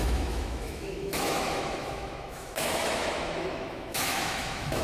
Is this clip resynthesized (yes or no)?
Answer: yes